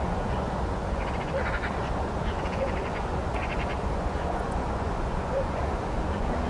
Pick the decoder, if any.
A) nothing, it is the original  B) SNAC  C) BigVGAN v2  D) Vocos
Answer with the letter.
D